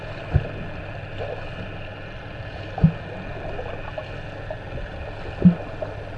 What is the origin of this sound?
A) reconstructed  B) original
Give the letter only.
B